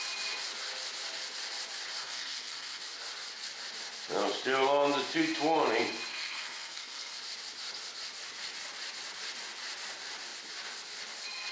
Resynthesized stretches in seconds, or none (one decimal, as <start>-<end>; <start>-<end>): 2.0-2.8; 6.1-7.2

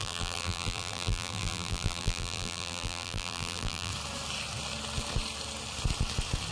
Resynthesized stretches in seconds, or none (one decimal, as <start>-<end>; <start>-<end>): 0.0-3.9